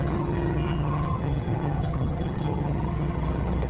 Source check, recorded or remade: remade